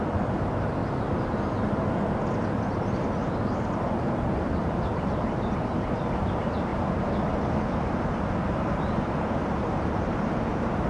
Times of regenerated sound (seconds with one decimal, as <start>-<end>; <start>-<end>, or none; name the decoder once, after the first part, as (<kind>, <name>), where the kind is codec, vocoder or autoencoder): 0.0-0.8 (vocoder, BigVGAN v2); 4.6-6.7; 9.3-10.9